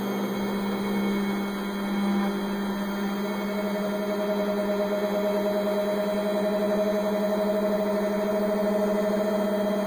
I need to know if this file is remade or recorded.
recorded